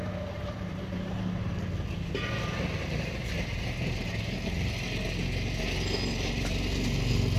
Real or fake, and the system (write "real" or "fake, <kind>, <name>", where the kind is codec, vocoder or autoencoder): real